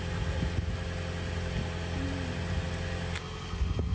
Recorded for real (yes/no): yes